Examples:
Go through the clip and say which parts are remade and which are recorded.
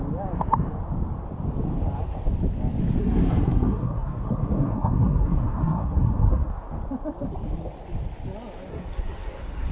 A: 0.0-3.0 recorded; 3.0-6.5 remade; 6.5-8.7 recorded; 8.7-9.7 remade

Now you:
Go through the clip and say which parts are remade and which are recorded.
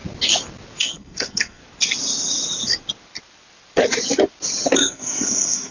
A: 0.0-0.8 recorded; 0.8-1.6 remade; 1.6-4.8 recorded; 4.8-5.7 remade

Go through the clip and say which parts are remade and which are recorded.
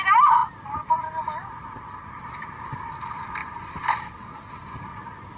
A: 0.0-5.4 recorded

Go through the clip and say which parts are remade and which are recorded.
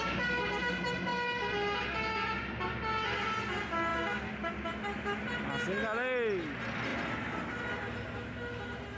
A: 0.0-9.0 recorded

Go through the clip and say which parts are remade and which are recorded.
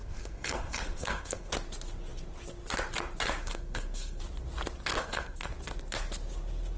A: 0.0-1.5 remade; 1.5-3.4 recorded; 3.4-4.2 remade; 4.2-5.0 recorded; 5.0-5.5 remade; 5.5-6.8 recorded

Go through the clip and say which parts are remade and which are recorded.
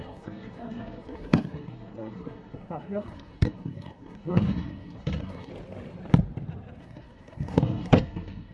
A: 0.0-5.5 remade; 5.5-6.8 recorded; 6.8-8.5 remade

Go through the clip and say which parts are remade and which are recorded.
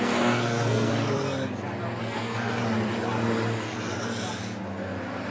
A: 0.0-0.9 remade; 0.9-2.0 recorded; 2.0-2.6 remade; 2.6-5.3 recorded